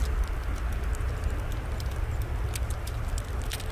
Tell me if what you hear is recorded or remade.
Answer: recorded